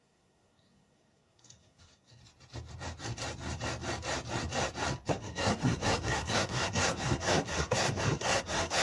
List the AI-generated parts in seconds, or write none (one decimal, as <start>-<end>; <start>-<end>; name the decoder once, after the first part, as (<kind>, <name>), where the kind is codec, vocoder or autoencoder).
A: 0.0-2.2 (codec, SNAC); 5.1-8.8